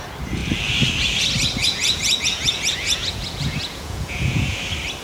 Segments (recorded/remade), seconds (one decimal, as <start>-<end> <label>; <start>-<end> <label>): 0.0-1.6 recorded; 1.6-4.6 remade; 4.6-5.0 recorded